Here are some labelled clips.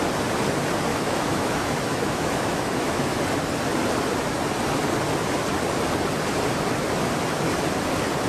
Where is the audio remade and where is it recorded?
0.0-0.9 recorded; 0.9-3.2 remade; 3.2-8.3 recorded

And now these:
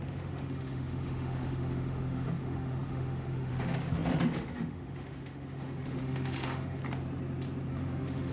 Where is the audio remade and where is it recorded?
0.0-6.8 remade; 6.8-7.7 recorded; 7.7-8.3 remade

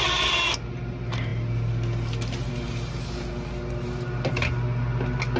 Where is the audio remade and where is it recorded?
0.0-5.4 recorded

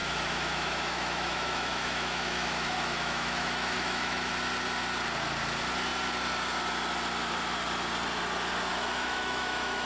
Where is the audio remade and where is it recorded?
0.0-4.3 remade; 4.3-8.7 recorded; 8.7-9.9 remade